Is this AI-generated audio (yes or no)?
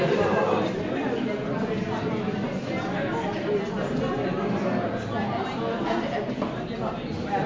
no